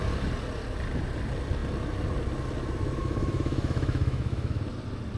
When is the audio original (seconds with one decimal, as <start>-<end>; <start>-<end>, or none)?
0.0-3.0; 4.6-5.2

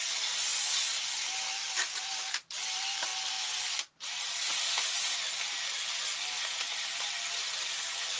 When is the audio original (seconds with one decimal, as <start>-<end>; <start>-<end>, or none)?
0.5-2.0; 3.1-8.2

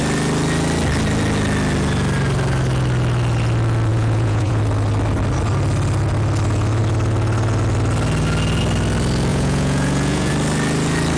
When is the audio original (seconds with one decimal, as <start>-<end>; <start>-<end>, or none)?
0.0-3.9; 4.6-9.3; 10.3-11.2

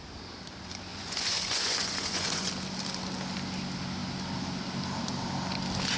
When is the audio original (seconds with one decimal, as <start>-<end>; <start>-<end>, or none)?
0.0-0.9; 2.5-6.0